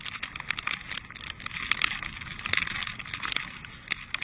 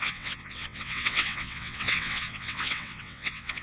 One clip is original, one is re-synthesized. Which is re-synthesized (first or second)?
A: second